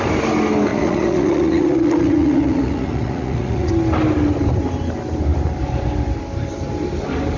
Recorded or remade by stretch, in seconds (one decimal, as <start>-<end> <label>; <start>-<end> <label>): 0.0-0.7 recorded; 0.7-3.7 remade; 3.7-7.4 recorded

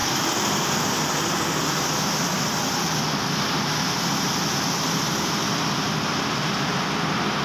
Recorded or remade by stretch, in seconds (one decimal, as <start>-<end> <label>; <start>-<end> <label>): 0.0-7.4 recorded

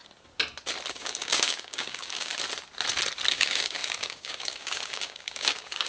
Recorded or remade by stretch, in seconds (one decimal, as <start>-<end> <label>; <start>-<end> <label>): 0.0-0.9 recorded; 0.9-2.3 remade; 2.3-3.3 recorded; 3.3-5.9 remade

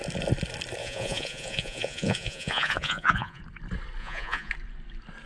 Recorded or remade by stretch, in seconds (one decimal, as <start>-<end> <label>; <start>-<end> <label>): 0.0-0.8 recorded; 0.8-3.4 remade; 3.4-4.0 recorded; 4.0-4.5 remade; 4.5-5.3 recorded

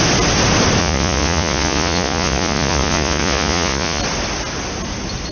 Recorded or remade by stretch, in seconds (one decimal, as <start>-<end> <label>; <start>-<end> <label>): 0.0-0.8 recorded; 0.8-4.0 remade; 4.0-5.3 recorded

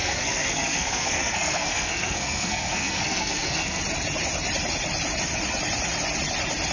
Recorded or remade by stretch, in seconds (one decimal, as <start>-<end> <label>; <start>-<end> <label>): 0.0-3.8 remade; 3.8-6.7 recorded

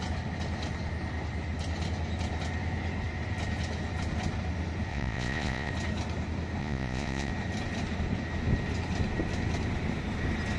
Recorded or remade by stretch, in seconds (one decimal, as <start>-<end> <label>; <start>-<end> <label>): 0.0-4.9 recorded; 4.9-5.7 remade; 5.7-6.6 recorded; 6.6-7.3 remade; 7.3-10.6 recorded